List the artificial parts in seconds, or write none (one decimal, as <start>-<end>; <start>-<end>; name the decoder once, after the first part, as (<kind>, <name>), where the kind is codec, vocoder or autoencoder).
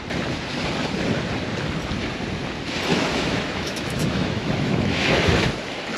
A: 2.9-5.5 (autoencoder, DAC-VAE)